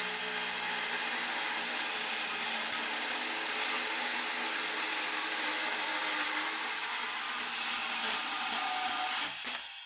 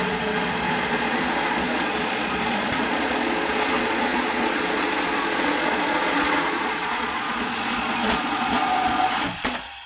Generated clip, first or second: second